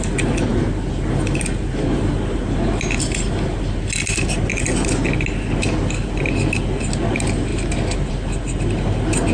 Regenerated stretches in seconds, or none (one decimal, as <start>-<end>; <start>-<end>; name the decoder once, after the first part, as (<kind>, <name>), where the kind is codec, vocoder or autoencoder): none